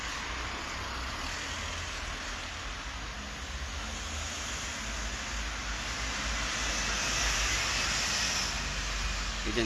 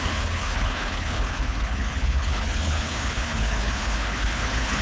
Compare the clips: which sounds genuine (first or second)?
first